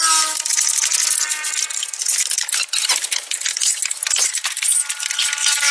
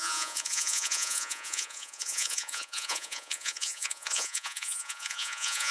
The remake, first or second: second